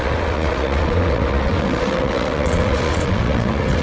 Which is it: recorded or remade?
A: remade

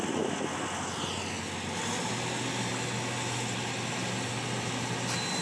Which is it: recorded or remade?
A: recorded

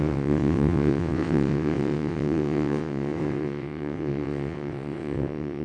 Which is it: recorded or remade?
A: remade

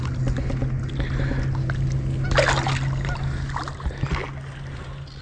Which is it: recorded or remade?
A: recorded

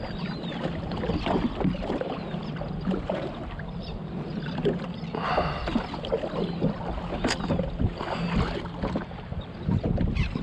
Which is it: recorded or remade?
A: recorded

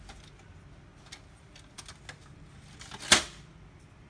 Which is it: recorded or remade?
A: recorded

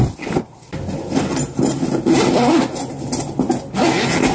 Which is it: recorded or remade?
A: recorded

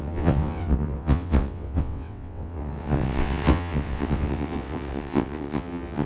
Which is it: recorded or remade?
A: remade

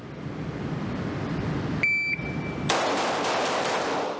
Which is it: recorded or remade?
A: recorded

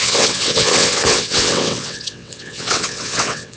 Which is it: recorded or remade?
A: remade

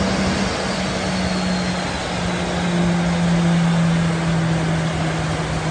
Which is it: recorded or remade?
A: recorded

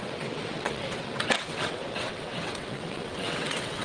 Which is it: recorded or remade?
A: remade